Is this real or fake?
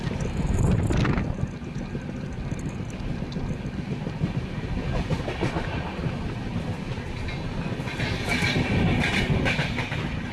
real